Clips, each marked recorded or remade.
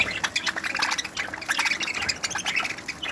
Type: recorded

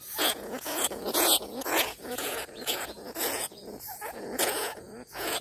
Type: remade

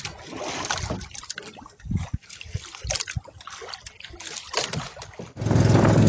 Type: recorded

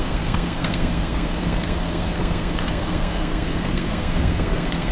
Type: remade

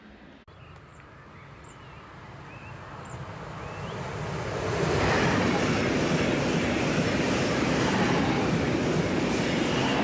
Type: recorded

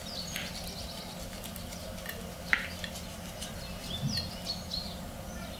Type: recorded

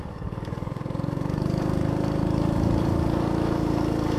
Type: remade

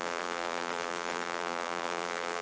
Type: remade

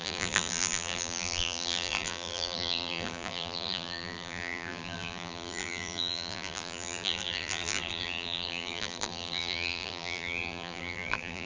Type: remade